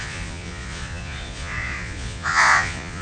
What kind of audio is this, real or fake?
fake